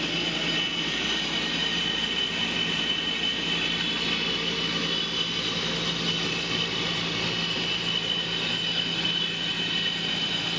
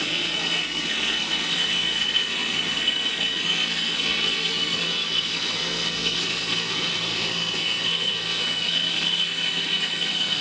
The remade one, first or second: second